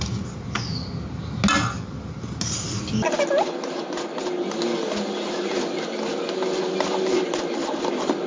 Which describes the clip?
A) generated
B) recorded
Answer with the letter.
B